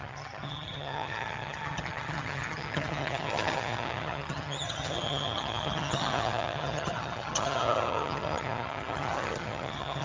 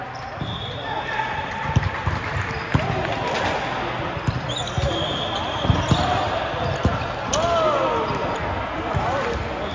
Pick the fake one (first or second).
first